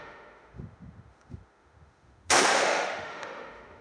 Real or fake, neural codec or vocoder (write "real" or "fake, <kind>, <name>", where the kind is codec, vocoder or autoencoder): fake, autoencoder, DAC-VAE